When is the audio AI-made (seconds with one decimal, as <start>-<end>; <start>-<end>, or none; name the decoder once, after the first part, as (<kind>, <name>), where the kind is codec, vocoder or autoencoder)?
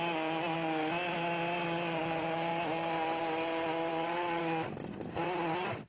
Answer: 3.9-4.4 (vocoder, WaveNeXt)